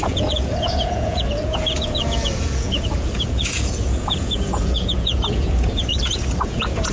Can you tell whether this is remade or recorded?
remade